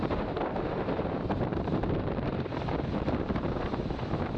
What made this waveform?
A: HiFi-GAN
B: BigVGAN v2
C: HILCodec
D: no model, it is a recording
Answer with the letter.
B